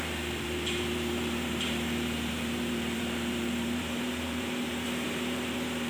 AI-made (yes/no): yes